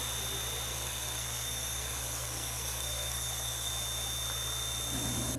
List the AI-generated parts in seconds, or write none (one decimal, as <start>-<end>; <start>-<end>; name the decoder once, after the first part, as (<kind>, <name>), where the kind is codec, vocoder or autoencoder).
0.7-3.7 (codec, SNAC)